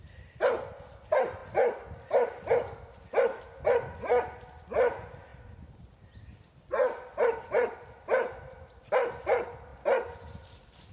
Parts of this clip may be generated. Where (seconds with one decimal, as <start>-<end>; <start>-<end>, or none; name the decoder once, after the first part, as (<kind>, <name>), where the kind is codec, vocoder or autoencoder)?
1.4-3.4 (vocoder, BigVGAN v2); 5.3-8.0